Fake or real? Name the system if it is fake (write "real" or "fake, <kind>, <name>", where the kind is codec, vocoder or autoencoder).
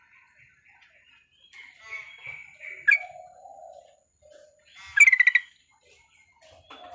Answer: real